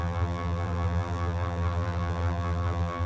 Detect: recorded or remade remade